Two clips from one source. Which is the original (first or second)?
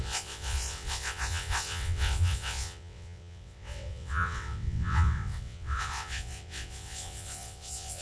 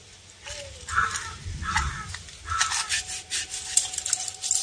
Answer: second